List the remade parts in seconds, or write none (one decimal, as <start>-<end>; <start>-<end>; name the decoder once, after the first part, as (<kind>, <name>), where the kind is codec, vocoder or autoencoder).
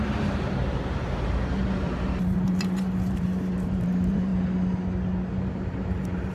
0.0-4.3 (vocoder, BigVGAN v2); 5.3-6.3